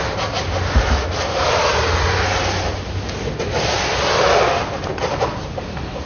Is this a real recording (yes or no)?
yes